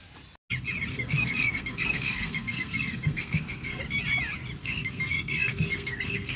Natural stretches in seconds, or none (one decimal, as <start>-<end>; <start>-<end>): 0.0-0.9; 3.8-4.6